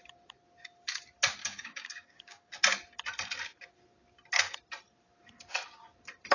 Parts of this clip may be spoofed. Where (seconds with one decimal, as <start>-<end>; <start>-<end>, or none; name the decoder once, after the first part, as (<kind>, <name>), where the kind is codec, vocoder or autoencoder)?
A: 1.4-2.5 (codec, DAC)